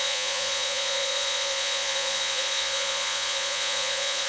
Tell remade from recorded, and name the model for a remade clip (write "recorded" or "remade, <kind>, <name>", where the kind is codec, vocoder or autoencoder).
remade, vocoder, Vocos